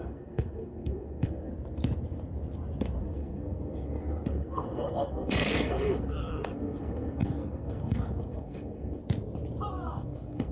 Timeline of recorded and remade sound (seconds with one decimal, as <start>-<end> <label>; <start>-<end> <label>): 0.0-1.5 remade; 1.5-3.0 recorded; 3.0-9.0 remade; 9.0-9.7 recorded; 9.7-10.5 remade